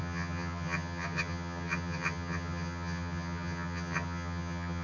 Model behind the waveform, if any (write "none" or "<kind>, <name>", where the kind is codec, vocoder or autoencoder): vocoder, HiFi-GAN